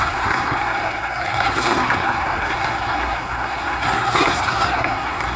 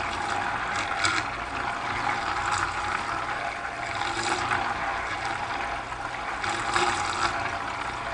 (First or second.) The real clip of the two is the second